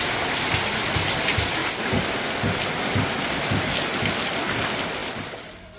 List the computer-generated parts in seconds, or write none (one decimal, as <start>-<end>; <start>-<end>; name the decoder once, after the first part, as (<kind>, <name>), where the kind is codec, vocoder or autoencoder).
none